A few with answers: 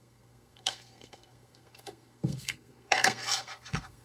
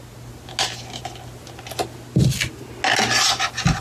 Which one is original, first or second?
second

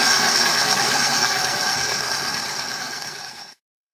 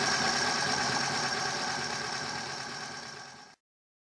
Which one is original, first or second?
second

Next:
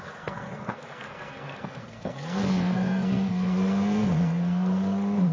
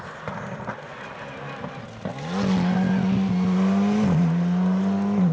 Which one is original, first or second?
second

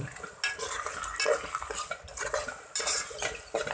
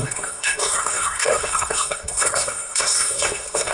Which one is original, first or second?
first